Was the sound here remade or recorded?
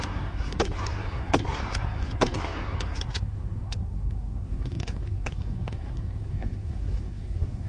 remade